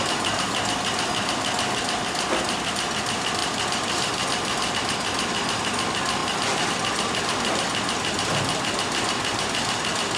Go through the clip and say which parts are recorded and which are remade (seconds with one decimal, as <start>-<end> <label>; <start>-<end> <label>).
0.0-10.2 recorded